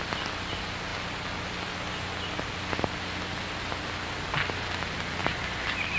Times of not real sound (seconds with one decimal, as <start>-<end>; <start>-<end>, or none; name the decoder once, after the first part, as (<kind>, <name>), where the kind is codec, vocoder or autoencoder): none